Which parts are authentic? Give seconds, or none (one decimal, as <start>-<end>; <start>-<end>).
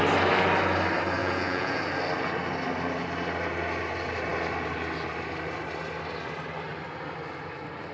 0.0-1.2; 1.8-7.9